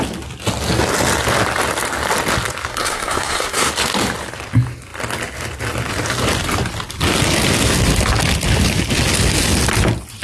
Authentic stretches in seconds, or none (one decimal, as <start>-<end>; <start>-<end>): 0.0-2.7; 3.7-10.2